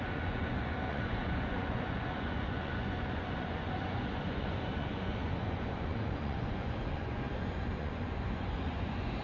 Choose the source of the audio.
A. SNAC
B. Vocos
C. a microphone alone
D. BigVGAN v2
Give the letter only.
B